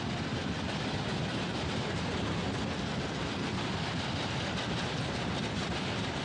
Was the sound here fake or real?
real